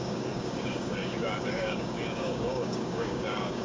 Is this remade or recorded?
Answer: remade